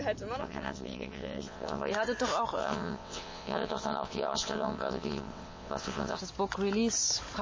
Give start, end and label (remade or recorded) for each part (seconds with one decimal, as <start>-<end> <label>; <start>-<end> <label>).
0.0-0.4 recorded; 0.4-1.9 remade; 1.9-2.6 recorded; 2.6-6.2 remade; 6.2-7.4 recorded